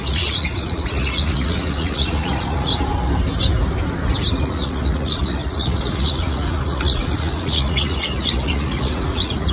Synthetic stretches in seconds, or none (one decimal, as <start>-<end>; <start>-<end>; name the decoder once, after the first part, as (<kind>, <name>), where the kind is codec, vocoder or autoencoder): 0.0-2.7 (vocoder, Vocos); 4.4-9.5